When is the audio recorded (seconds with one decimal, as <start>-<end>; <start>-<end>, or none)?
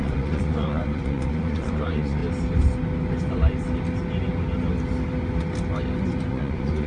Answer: 2.2-6.3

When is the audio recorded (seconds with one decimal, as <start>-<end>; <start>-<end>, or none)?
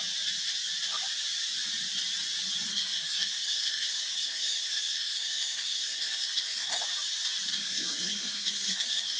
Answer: 0.0-2.7; 6.8-7.5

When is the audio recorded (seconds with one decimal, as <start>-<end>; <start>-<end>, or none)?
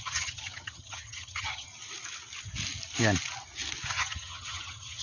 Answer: 1.7-3.9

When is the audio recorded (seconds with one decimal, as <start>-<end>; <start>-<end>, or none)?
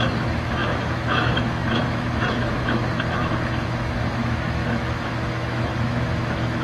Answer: none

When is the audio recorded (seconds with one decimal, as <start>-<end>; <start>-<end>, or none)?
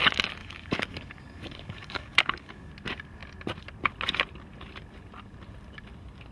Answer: 0.0-0.4; 2.7-6.3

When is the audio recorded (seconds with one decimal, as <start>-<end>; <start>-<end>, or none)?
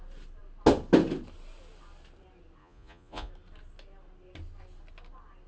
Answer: 0.0-2.6; 3.3-5.5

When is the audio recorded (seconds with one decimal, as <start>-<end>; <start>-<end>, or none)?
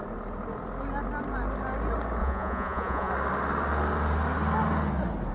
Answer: 0.0-2.2; 3.1-5.3